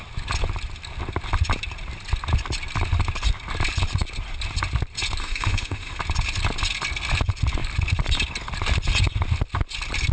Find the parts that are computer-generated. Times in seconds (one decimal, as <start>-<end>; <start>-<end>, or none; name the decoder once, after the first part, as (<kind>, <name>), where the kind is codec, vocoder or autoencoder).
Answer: 5.2-6.0 (autoencoder, DAC-VAE)